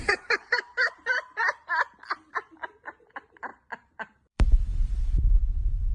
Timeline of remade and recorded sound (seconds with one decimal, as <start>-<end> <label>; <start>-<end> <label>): 0.0-0.4 recorded; 0.4-1.4 remade; 1.4-3.5 recorded; 3.5-5.0 remade; 5.0-5.9 recorded